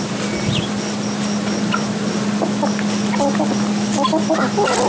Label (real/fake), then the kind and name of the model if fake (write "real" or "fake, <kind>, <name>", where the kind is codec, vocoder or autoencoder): real